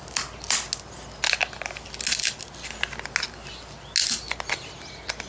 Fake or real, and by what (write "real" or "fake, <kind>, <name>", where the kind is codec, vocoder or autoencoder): real